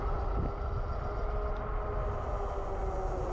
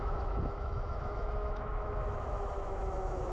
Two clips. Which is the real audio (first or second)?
first